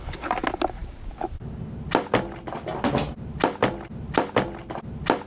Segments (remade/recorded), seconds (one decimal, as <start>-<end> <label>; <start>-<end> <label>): 0.0-5.3 recorded

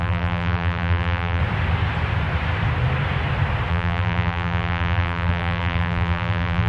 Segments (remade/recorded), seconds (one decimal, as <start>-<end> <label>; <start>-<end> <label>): 0.0-1.4 remade; 1.4-3.7 recorded; 3.7-6.7 remade

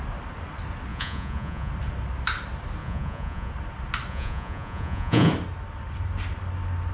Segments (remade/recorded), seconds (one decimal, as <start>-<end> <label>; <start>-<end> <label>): 0.0-0.9 recorded; 0.9-1.7 remade; 1.7-2.8 recorded; 2.8-3.5 remade; 3.5-4.1 recorded; 4.1-5.3 remade; 5.3-6.9 recorded